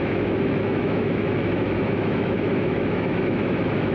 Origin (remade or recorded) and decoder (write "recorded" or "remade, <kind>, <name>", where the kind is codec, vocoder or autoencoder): remade, autoencoder, DAC-VAE